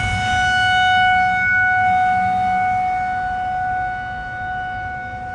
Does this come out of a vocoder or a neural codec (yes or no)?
no